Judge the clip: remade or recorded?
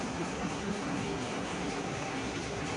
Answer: remade